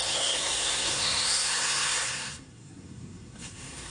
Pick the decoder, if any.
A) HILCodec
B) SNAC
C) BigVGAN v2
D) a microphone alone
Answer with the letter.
B